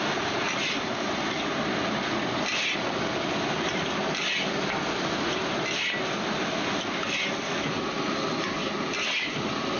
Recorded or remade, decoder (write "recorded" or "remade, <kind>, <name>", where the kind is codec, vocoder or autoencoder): recorded